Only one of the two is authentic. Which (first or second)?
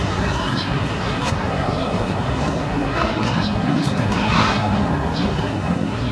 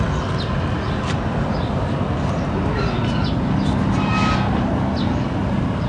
second